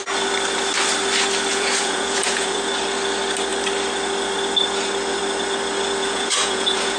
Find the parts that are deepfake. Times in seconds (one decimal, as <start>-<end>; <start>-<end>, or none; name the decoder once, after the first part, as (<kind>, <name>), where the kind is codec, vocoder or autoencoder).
1.5-2.7 (vocoder, Vocos); 6.0-7.0